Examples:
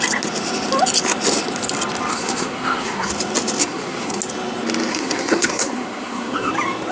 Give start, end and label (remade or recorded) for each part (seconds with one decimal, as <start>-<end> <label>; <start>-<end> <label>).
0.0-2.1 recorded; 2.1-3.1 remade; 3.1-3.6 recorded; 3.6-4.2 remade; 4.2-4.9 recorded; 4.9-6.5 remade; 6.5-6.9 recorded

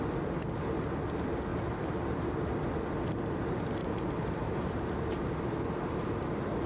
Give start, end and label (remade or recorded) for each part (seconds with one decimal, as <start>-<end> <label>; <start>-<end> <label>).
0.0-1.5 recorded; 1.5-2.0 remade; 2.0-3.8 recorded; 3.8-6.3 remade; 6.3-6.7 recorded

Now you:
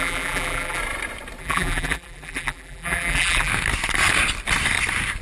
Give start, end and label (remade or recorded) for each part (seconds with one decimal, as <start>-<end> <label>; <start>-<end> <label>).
0.0-0.8 remade; 0.8-1.4 recorded; 1.4-3.5 remade; 3.5-5.2 recorded

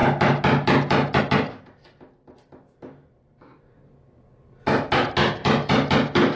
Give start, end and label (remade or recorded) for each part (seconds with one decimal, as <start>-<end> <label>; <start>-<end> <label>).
0.0-6.4 recorded

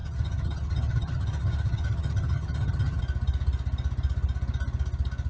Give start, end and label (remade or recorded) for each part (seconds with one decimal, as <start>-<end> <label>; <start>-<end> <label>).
0.0-3.0 remade; 3.0-5.3 recorded